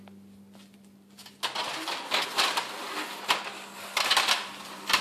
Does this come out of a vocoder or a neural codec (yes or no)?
no